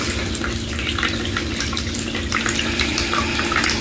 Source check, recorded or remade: recorded